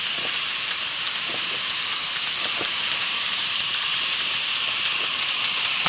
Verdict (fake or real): fake